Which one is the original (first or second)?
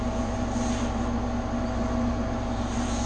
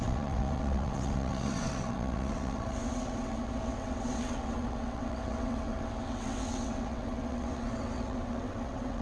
first